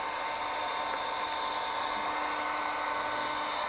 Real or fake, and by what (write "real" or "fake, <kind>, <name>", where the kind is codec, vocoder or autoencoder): real